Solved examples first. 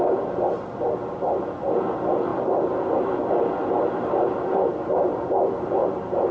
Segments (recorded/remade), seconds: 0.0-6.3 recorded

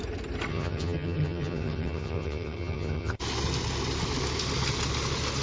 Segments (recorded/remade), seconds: 0.0-0.5 recorded; 0.5-3.2 remade; 3.2-5.4 recorded

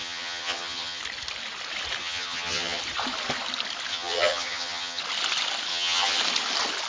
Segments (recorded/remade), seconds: 0.0-1.0 remade; 1.0-2.0 recorded; 2.0-2.8 remade; 2.8-3.9 recorded; 3.9-5.0 remade; 5.0-5.7 recorded; 5.7-6.2 remade; 6.2-6.9 recorded